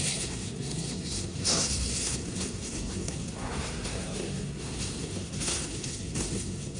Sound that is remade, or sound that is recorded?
remade